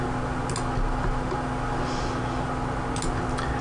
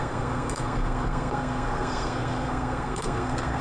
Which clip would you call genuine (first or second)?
first